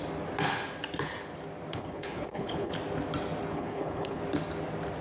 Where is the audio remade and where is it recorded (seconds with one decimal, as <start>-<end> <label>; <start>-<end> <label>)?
0.0-1.7 recorded; 1.7-2.7 remade; 2.7-3.5 recorded; 3.5-4.2 remade; 4.2-5.0 recorded